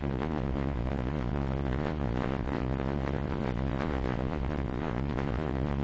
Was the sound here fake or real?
fake